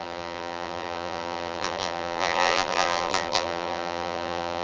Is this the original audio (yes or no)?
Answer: no